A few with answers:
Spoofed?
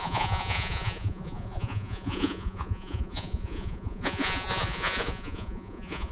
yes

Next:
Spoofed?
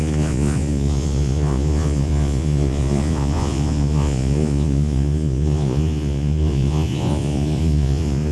yes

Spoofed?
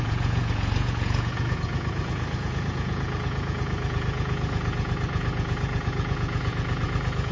yes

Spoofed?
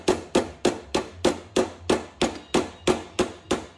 no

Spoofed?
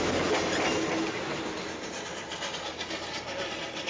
no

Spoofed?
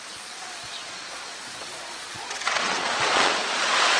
yes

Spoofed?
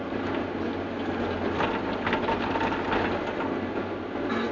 no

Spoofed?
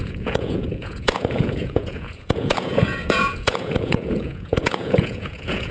yes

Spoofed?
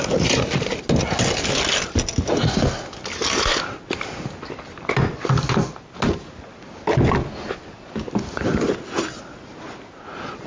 no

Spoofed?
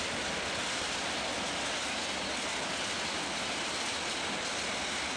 no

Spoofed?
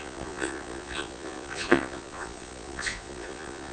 yes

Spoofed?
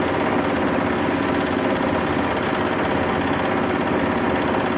no